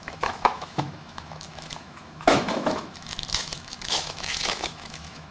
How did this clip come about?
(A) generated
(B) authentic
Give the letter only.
A